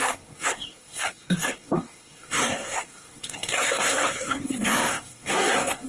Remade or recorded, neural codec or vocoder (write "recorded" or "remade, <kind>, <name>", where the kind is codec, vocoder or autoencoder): remade, codec, SNAC